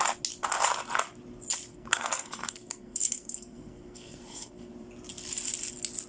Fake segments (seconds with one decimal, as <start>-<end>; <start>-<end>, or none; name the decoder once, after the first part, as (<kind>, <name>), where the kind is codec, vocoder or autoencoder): 1.7-4.7 (codec, SNAC)